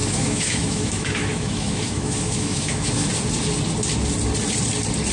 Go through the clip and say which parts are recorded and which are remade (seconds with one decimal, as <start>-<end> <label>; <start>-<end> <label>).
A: 0.0-3.1 remade; 3.1-5.1 recorded